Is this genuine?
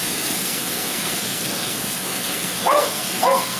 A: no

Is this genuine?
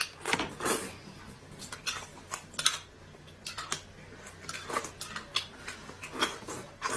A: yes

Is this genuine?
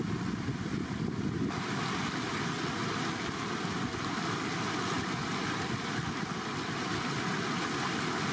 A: yes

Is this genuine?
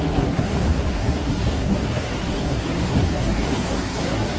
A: no